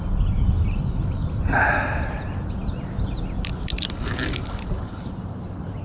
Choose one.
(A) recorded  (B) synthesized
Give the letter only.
A